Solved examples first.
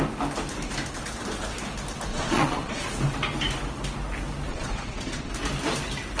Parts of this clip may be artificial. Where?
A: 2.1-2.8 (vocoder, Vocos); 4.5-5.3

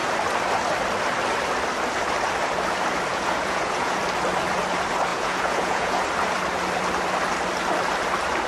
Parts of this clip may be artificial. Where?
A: 3.1-4.0 (vocoder, Vocos); 5.1-6.0

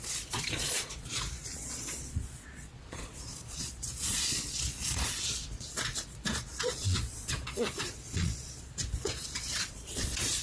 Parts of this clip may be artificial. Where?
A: 0.0-10.4 (vocoder, Vocos)

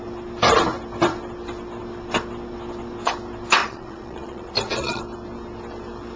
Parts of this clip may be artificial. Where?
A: 3.6-5.0 (vocoder, Vocos)

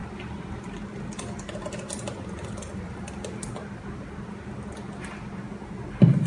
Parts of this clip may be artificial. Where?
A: none

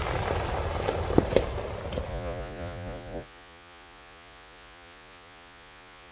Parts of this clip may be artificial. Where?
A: 2.1-6.1 (vocoder, Vocos)

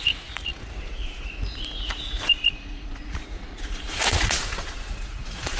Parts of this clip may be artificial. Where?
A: 0.0-5.6 (vocoder, Vocos)

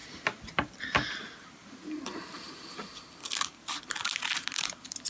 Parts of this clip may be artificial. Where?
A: none